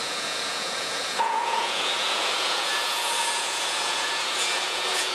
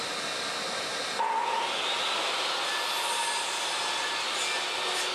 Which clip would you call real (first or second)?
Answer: second